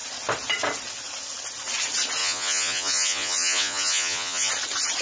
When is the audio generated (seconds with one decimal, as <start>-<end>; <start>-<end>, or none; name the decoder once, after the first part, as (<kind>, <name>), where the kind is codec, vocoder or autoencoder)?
2.2-4.5 (vocoder, Vocos)